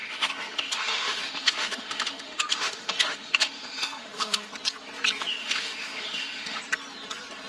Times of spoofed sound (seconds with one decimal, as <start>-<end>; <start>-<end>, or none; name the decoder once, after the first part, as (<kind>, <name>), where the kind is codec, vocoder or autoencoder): 0.0-4.5 (autoencoder, DAC-VAE); 5.4-6.6